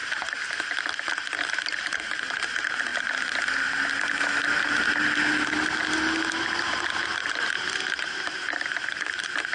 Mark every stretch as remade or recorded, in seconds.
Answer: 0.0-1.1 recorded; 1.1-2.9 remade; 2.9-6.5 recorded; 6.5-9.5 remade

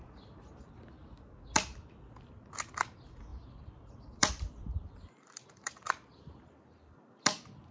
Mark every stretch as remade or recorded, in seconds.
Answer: 0.0-3.3 recorded; 3.3-7.2 remade; 7.2-7.7 recorded

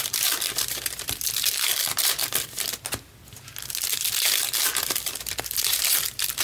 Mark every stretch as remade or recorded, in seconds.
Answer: 0.0-2.2 remade; 2.2-5.4 recorded; 5.4-6.4 remade

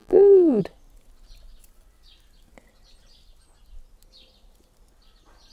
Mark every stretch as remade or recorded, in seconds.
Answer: 0.0-0.6 remade; 0.6-5.5 recorded

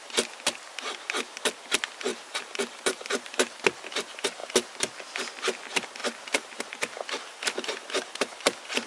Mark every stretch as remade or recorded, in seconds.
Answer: 0.0-2.1 recorded; 2.1-3.6 remade; 3.6-6.0 recorded; 6.0-6.6 remade; 6.6-8.9 recorded

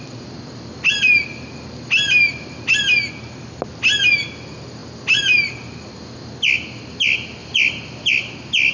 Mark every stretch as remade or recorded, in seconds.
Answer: 0.0-7.4 recorded; 7.4-8.1 remade; 8.1-8.7 recorded

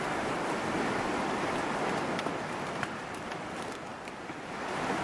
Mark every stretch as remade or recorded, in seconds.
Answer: 0.0-5.0 remade